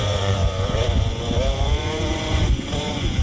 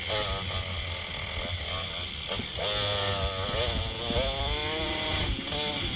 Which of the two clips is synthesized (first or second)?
first